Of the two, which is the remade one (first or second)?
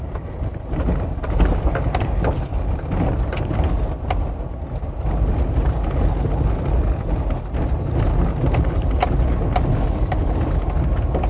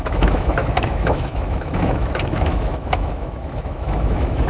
second